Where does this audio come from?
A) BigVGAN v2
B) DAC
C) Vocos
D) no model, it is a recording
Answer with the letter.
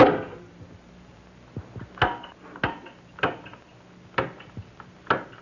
D